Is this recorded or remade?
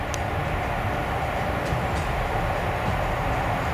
recorded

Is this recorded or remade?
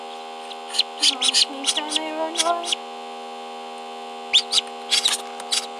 recorded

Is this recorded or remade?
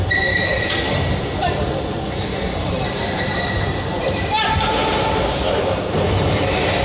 remade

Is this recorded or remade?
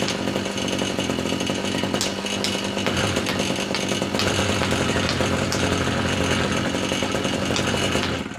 recorded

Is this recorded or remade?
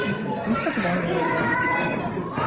remade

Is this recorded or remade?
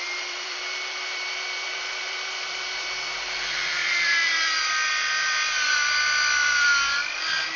remade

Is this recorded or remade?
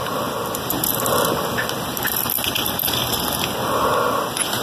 recorded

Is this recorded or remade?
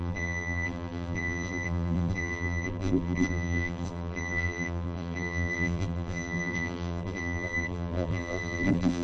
remade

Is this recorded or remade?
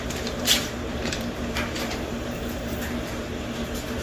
remade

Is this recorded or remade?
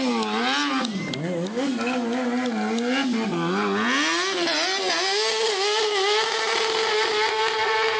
recorded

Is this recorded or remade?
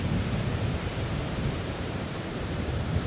remade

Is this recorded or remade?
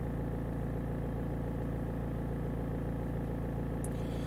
recorded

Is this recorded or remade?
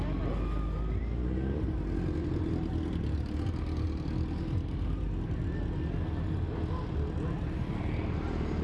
recorded